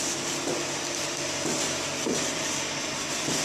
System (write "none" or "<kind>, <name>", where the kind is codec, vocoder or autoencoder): none